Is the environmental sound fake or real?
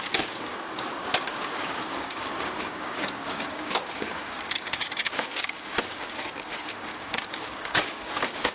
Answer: fake